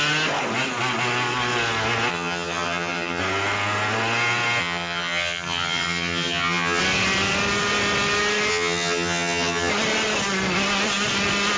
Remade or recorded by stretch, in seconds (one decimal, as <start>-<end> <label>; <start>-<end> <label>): 0.0-2.1 recorded; 2.1-3.2 remade; 3.2-4.6 recorded; 4.6-6.8 remade; 6.8-8.5 recorded; 8.5-9.7 remade; 9.7-11.6 recorded